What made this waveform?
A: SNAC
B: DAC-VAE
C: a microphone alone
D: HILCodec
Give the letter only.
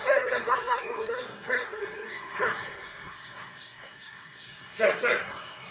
A